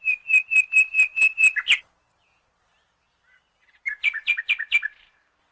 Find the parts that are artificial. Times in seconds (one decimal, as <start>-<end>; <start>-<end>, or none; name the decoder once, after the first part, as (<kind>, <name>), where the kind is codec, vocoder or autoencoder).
none